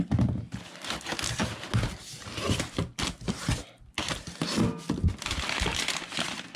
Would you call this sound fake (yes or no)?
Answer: no